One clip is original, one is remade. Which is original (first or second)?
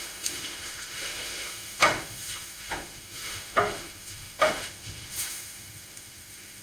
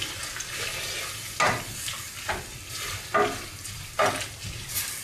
second